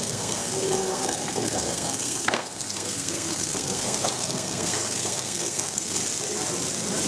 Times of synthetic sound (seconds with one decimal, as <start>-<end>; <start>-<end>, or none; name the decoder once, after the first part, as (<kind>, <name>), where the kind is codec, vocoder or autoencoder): 0.0-6.0 (codec, SNAC)